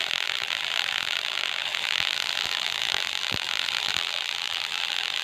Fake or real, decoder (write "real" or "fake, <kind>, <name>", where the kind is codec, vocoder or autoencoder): fake, vocoder, BigVGAN v2